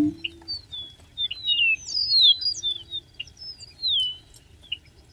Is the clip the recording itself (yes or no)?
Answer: yes